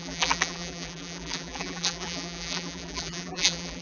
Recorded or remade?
remade